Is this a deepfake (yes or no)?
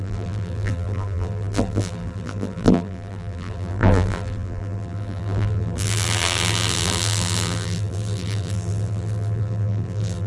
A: yes